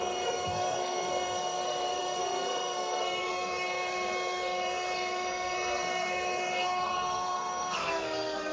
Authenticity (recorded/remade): remade